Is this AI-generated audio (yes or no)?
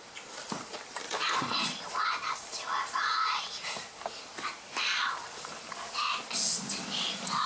no